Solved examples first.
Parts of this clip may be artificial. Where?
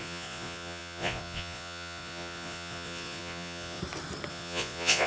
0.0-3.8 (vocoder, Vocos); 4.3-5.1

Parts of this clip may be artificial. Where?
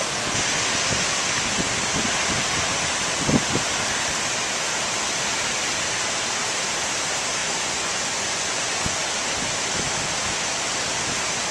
7.4-9.0 (vocoder, Vocos)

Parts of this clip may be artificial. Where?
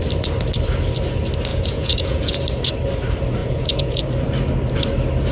1.5-2.4 (vocoder, Vocos); 3.4-4.0